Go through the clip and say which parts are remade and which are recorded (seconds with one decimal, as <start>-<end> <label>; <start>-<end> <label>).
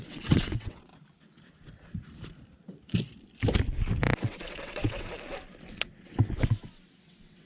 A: 0.0-0.9 remade; 0.9-4.2 recorded; 4.2-5.1 remade; 5.1-5.7 recorded; 5.7-7.5 remade